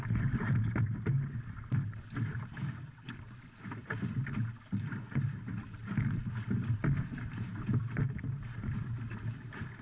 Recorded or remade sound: recorded